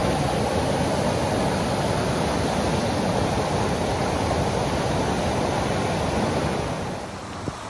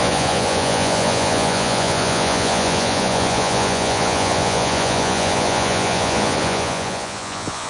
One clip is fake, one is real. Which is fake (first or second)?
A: second